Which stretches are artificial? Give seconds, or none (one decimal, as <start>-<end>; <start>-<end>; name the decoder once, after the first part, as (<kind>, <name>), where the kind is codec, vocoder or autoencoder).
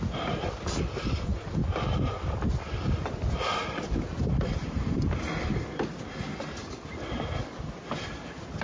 none